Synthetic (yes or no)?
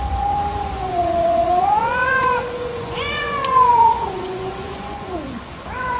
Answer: yes